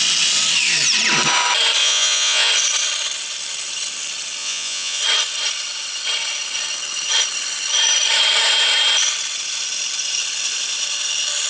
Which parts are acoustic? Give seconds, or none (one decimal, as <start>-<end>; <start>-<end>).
0.0-1.8; 2.5-4.4; 5.0-11.5